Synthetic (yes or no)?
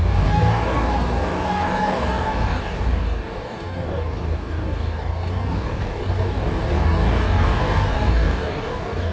yes